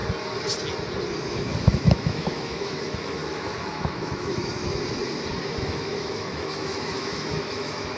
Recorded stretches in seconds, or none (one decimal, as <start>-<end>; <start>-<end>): 0.0-1.2; 4.6-5.5